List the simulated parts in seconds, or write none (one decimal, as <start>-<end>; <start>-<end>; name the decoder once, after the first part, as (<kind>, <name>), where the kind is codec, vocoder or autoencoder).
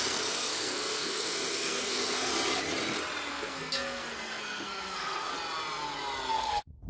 0.0-2.3 (codec, SNAC); 3.3-5.3; 6.3-6.9